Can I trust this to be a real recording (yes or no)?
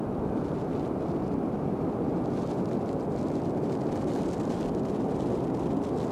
yes